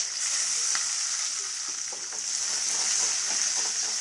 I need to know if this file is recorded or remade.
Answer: recorded